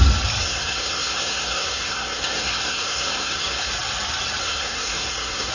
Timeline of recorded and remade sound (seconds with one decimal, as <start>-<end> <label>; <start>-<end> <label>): 0.0-0.4 recorded; 0.4-3.7 remade; 3.7-4.4 recorded; 4.4-5.5 remade